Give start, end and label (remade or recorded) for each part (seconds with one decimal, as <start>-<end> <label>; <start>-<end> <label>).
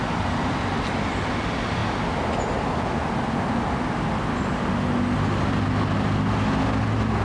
0.0-7.2 recorded